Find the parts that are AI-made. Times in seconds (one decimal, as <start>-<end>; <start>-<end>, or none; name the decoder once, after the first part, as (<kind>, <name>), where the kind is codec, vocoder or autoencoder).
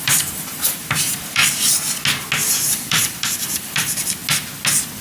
0.0-1.4 (vocoder, BigVGAN v2); 2.5-4.2